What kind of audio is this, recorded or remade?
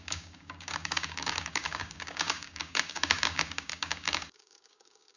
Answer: remade